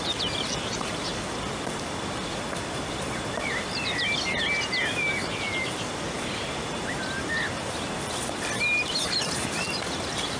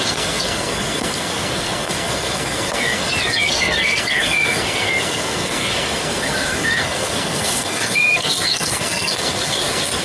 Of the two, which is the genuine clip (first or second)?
first